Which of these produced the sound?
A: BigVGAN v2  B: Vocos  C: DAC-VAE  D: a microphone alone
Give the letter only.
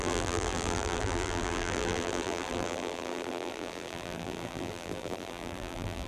A